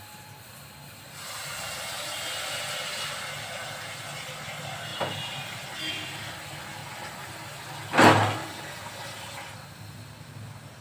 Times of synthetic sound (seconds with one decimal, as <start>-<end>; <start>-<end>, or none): 4.9-5.9; 6.8-7.3; 8.4-9.0

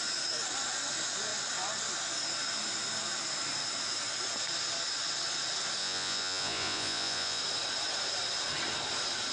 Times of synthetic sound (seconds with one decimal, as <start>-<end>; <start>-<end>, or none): 5.8-7.4

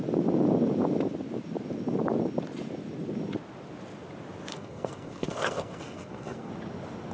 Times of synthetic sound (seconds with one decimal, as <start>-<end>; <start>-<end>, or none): 4.5-6.5

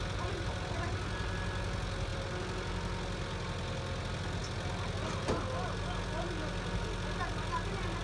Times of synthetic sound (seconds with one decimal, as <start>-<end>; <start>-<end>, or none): none

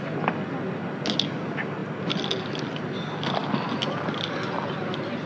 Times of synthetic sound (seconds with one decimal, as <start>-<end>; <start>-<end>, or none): none